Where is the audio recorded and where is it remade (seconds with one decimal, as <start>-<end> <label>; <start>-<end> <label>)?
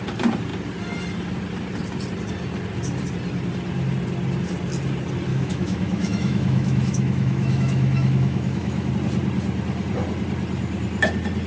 0.0-5.3 recorded; 5.3-8.9 remade; 8.9-11.5 recorded